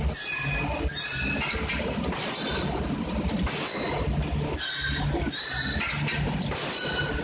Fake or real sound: real